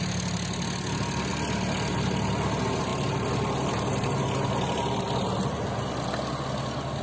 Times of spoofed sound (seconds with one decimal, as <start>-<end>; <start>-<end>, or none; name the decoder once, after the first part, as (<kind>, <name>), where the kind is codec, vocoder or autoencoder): none